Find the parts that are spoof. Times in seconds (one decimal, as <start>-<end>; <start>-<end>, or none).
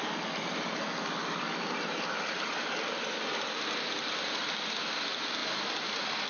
none